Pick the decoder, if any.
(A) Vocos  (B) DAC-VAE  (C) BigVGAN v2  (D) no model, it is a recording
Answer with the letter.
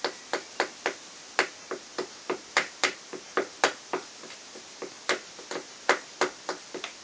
D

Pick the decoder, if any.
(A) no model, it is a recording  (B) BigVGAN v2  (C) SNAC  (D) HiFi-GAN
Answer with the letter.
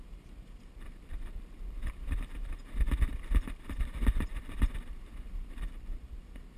B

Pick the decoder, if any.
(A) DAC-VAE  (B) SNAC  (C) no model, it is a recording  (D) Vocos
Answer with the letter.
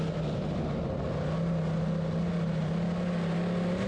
C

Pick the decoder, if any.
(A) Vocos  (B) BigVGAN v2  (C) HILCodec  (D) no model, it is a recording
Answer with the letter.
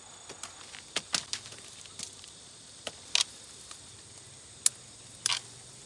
D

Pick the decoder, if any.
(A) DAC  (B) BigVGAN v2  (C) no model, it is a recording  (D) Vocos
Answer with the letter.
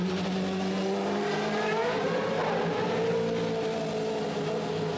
C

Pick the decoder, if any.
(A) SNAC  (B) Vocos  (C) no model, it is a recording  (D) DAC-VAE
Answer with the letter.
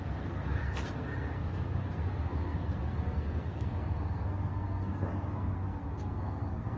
A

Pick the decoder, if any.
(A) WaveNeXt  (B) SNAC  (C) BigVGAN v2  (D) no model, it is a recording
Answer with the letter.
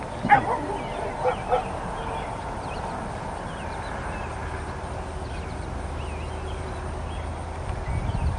D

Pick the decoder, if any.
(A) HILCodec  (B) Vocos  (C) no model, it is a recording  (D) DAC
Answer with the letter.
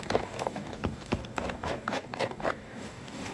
D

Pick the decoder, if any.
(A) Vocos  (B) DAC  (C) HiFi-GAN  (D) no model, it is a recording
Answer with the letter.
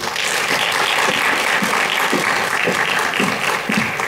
D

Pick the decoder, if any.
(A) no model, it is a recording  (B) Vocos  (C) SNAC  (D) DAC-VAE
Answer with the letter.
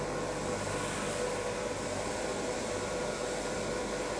A